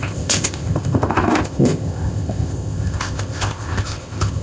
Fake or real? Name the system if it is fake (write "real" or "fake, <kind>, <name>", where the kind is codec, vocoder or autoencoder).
fake, codec, ZipCodec